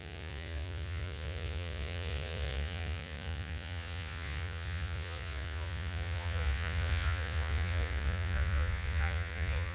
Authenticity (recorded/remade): remade